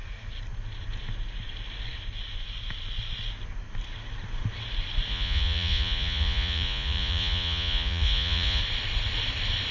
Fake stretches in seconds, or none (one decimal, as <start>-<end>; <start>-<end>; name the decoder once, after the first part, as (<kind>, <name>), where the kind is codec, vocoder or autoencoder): 5.1-8.6 (vocoder, Vocos)